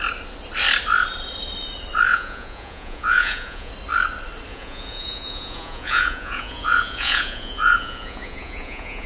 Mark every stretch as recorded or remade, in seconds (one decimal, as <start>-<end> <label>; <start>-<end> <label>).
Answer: 0.0-2.1 recorded; 2.1-3.7 remade; 3.7-4.5 recorded; 4.5-9.1 remade